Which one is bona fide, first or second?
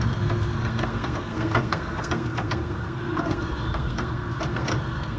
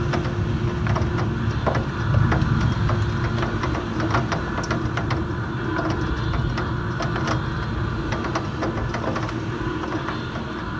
second